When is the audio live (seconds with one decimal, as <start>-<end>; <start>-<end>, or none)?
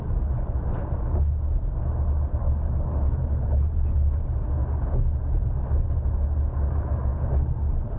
0.0-2.3; 3.2-8.0